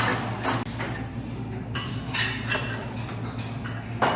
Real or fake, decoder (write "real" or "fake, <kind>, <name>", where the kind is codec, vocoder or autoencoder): real